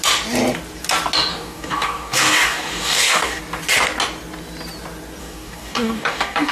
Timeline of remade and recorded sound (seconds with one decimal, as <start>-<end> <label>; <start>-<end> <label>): 0.0-1.3 recorded; 1.3-3.4 remade; 3.4-5.2 recorded; 5.2-6.5 remade